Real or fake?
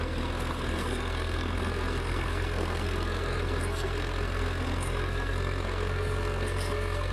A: fake